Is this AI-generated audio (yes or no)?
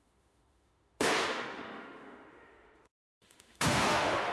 yes